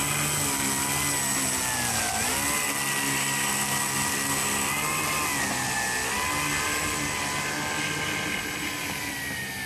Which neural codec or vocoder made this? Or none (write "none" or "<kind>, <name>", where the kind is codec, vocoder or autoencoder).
none